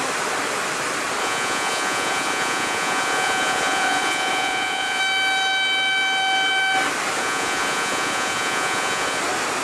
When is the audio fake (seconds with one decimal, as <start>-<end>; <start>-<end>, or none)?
1.2-5.0; 7.2-9.2